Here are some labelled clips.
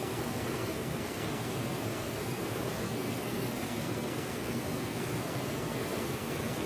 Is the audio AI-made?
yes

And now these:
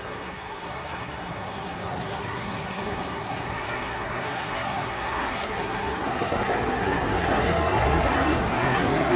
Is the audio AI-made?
yes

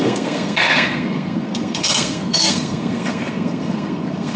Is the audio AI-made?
yes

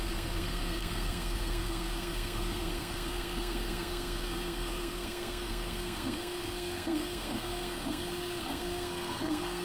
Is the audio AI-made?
yes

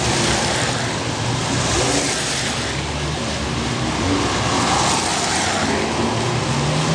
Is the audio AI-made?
no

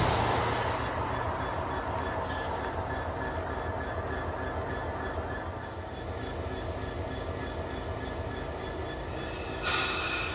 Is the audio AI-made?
no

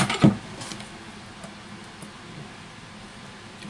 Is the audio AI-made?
no